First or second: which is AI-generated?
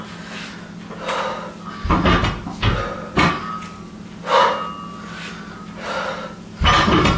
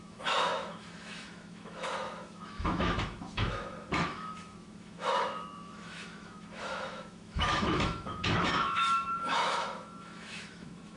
second